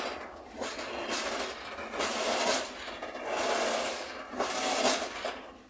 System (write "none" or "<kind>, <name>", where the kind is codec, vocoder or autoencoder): none